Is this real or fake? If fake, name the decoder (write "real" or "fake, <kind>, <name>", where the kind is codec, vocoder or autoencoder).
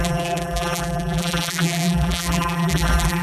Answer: fake, vocoder, BigVGAN v2